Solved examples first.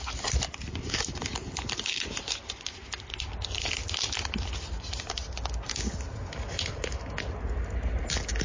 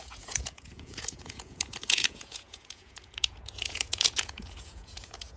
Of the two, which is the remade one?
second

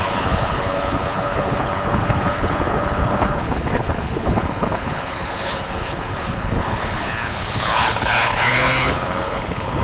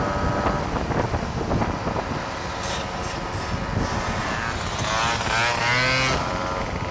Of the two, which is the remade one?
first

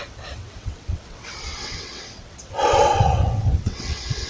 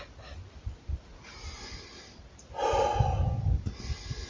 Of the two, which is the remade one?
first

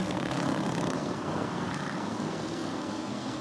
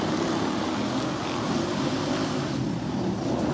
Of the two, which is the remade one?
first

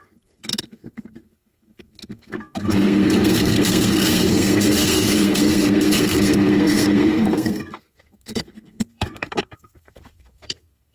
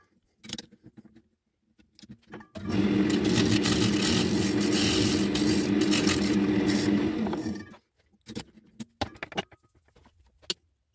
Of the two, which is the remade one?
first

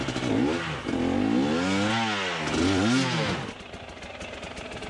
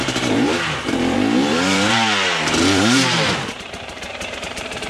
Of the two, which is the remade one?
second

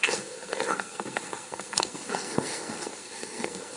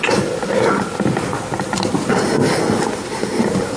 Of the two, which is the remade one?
first